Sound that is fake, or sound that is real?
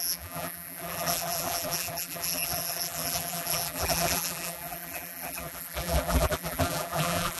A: fake